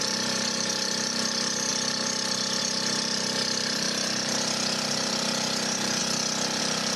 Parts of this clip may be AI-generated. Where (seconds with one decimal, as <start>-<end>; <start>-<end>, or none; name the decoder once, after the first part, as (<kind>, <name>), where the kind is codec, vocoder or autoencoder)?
0.0-6.0 (vocoder, BigVGAN v2); 6.6-7.0